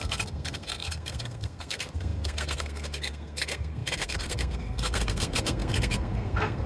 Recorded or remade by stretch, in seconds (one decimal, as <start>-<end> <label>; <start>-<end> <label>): 0.0-6.7 remade